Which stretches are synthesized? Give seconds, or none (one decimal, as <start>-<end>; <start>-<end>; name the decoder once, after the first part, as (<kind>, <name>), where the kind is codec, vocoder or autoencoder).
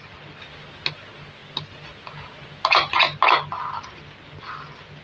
none